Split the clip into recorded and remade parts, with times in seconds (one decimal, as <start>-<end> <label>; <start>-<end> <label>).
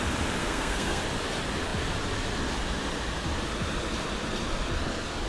0.0-0.4 recorded; 0.4-1.0 remade; 1.0-5.3 recorded